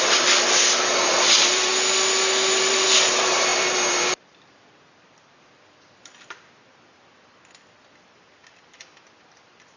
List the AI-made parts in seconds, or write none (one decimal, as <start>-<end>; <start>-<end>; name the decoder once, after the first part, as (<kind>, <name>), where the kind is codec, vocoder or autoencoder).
0.0-1.7 (vocoder, BigVGAN v2); 2.6-9.8